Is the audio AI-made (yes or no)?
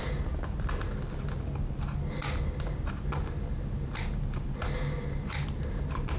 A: no